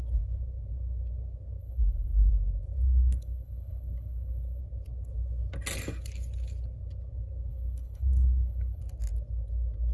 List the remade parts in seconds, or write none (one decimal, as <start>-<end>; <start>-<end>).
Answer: 1.6-2.3; 2.8-4.6; 7.5-8.8